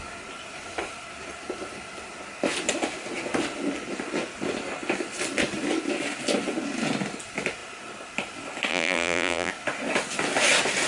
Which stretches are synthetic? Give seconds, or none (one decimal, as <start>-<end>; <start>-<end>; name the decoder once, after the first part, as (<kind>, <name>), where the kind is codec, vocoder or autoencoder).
8.7-9.5 (vocoder, BigVGAN v2)